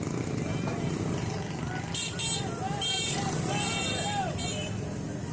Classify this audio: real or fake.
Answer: real